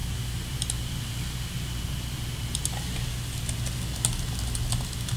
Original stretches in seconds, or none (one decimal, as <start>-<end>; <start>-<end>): 0.9-5.2